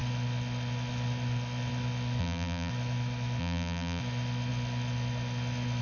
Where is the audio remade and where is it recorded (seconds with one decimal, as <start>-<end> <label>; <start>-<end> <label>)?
0.0-2.2 recorded; 2.2-2.7 remade; 2.7-3.4 recorded; 3.4-4.0 remade; 4.0-5.8 recorded